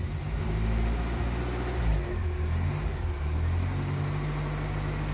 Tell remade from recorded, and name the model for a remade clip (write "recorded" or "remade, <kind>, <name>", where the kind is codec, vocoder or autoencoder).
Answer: recorded